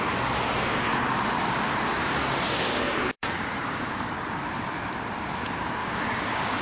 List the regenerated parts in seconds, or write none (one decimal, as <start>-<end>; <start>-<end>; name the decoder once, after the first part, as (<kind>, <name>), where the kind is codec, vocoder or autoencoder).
1.9-4.1 (codec, DAC); 5.8-6.6